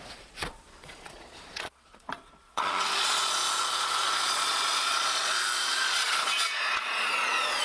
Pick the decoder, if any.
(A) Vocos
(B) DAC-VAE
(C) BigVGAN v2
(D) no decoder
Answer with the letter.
A